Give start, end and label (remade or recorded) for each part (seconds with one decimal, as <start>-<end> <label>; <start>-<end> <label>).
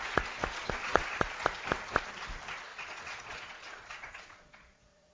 0.0-0.5 recorded; 0.5-1.2 remade; 1.2-2.7 recorded; 2.7-5.1 remade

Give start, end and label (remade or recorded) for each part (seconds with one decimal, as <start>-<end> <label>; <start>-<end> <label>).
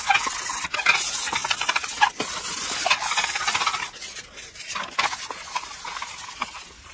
0.0-6.9 recorded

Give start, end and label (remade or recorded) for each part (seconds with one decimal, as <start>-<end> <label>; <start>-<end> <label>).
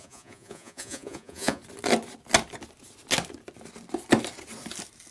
0.0-1.6 remade; 1.6-5.1 recorded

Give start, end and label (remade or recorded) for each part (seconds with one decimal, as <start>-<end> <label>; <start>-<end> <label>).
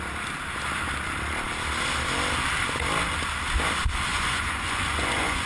0.0-4.1 recorded; 4.1-5.5 remade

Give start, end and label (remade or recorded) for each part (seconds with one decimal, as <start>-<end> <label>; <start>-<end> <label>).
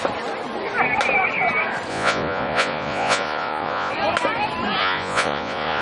0.0-1.9 recorded; 1.9-3.9 remade; 3.9-4.8 recorded; 4.8-5.8 remade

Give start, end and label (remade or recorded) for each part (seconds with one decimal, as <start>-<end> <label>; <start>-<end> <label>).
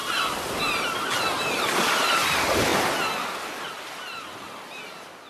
0.0-5.3 recorded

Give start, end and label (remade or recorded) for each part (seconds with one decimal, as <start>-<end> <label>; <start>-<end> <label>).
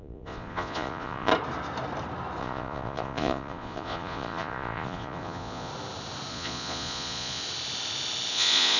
0.0-1.3 remade; 1.3-2.4 recorded; 2.4-5.7 remade; 5.7-6.3 recorded; 6.3-7.4 remade; 7.4-8.3 recorded; 8.3-8.8 remade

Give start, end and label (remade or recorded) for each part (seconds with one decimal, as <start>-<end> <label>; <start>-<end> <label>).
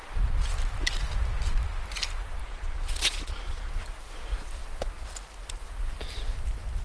0.0-2.4 recorded; 2.4-3.7 remade; 3.7-6.8 recorded